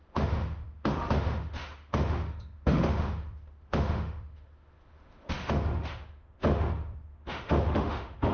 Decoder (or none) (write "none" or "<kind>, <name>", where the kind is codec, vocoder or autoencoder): autoencoder, DAC-VAE